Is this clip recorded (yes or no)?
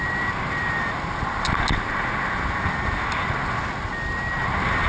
yes